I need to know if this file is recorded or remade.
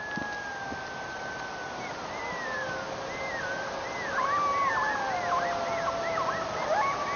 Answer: recorded